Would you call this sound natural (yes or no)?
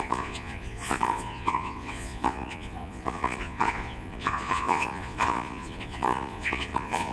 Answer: no